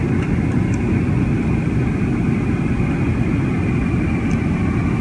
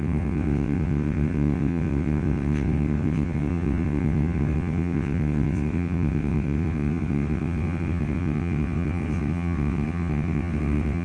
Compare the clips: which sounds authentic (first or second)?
first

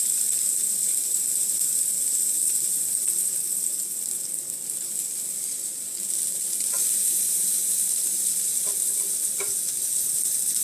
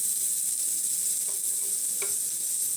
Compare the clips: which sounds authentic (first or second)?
second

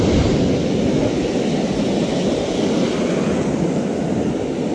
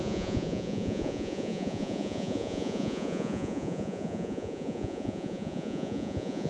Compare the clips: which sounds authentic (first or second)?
first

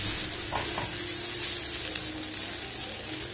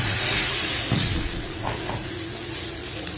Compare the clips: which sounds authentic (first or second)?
first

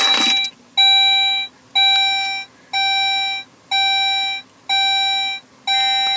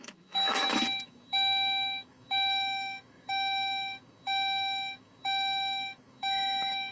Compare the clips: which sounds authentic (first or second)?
first